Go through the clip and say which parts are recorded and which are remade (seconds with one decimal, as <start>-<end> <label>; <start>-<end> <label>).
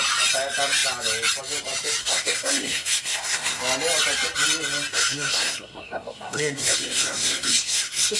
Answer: 0.0-2.0 recorded; 2.0-3.6 remade; 3.6-4.9 recorded; 4.9-8.2 remade